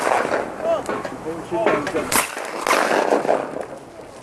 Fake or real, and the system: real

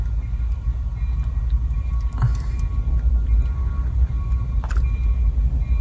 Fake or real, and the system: real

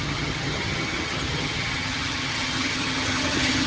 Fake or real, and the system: fake, vocoder, HiFi-GAN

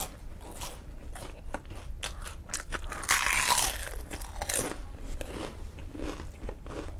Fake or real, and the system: real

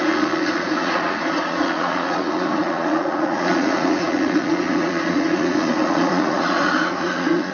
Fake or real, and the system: fake, vocoder, Vocos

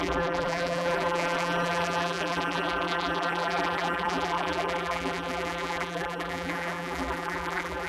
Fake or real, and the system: fake, vocoder, BigVGAN v2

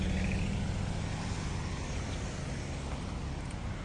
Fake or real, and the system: real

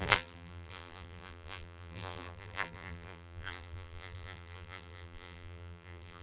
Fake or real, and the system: fake, vocoder, BigVGAN v2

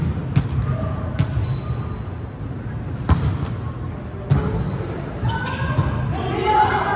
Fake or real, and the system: real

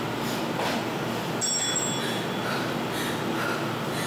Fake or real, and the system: real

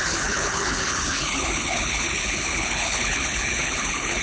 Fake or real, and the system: fake, codec, HILCodec